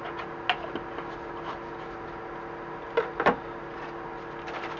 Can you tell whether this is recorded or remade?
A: recorded